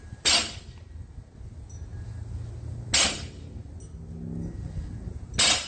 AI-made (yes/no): no